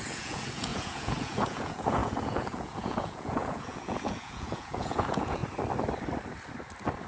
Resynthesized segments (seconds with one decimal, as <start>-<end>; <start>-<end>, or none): 0.0-5.4